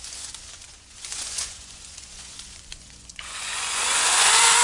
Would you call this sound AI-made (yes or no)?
yes